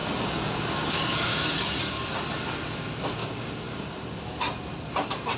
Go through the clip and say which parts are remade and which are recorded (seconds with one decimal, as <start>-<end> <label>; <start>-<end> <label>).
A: 0.0-1.8 remade; 1.8-3.2 recorded; 3.2-4.3 remade; 4.3-5.4 recorded